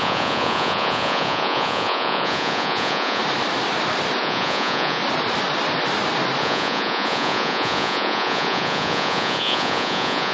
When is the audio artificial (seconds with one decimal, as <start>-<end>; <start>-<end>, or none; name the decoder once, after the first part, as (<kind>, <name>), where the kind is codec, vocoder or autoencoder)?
0.0-3.2 (vocoder, Vocos); 4.2-5.0; 6.4-10.3